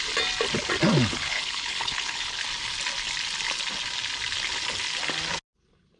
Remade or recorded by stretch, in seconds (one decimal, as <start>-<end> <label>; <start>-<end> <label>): 0.0-1.1 recorded; 1.1-2.4 remade; 2.4-6.0 recorded